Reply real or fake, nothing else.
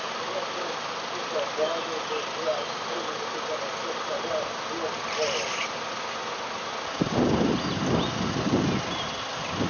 real